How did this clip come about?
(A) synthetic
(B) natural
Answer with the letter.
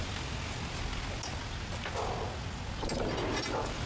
B